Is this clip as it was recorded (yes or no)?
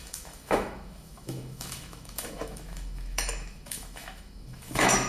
no